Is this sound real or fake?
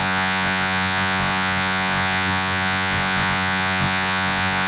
fake